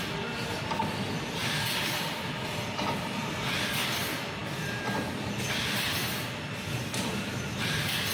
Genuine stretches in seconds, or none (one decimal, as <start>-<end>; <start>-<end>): 0.0-8.1